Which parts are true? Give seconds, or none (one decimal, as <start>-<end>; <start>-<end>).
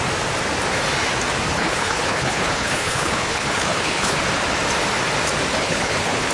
0.0-1.5; 4.2-5.5